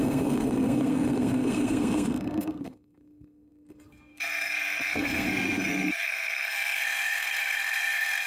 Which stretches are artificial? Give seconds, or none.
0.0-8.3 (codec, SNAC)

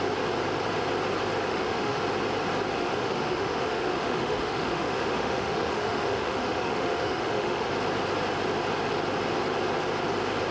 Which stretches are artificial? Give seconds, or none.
1.5-2.0 (autoencoder, DAC-VAE); 2.7-7.7

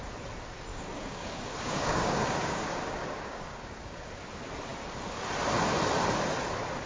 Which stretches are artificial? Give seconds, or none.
0.7-4.1 (codec, DAC)

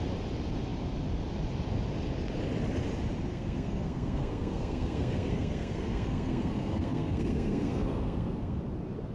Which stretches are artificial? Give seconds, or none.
3.3-8.6 (codec, SNAC)

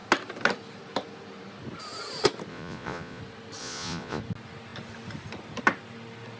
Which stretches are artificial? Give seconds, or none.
2.5-3.2 (vocoder, Vocos); 3.6-4.2

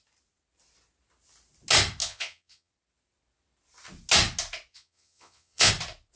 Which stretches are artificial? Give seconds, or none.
2.0-2.7 (vocoder, Vocos); 4.7-5.7

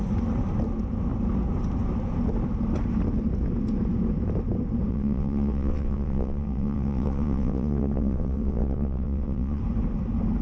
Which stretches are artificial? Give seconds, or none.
4.9-9.6 (vocoder, WaveNeXt)

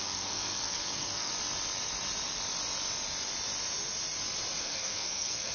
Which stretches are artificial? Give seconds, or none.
0.0-1.3 (codec, SNAC); 4.6-5.5